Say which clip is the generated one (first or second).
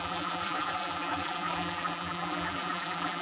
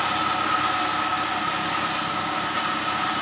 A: first